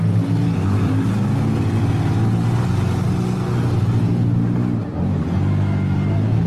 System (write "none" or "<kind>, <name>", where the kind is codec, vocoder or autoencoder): none